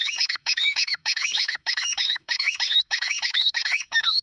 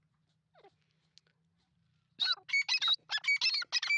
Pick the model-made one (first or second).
first